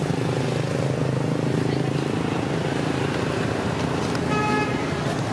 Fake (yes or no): no